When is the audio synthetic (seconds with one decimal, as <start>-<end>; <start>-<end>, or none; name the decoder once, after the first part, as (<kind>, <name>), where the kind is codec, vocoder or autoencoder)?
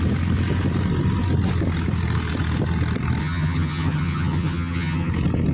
3.2-5.1 (vocoder, HiFi-GAN)